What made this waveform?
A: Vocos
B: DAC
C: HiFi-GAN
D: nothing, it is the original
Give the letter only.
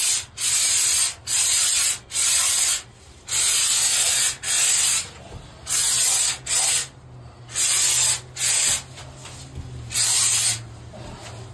D